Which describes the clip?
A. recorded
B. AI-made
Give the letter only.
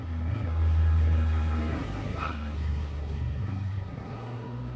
B